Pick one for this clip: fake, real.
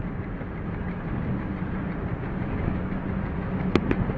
real